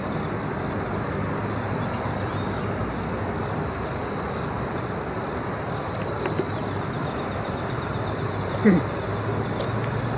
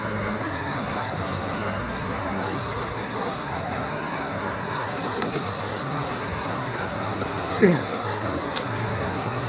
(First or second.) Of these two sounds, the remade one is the second